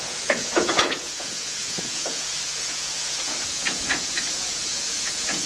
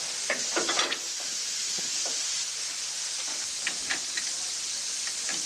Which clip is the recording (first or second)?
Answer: second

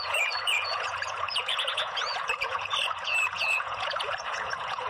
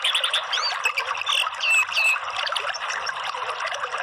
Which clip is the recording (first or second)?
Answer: second